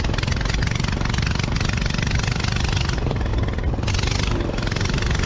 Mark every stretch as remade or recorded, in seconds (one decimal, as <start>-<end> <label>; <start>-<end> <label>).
0.0-5.3 recorded